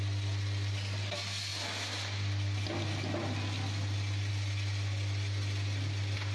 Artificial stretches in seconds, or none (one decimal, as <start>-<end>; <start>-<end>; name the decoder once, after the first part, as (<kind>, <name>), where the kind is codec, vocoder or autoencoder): none